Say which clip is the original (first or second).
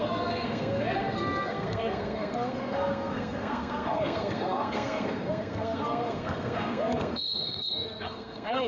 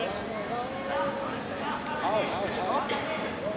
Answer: second